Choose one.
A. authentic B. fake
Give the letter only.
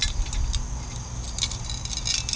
A